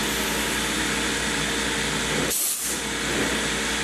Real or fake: real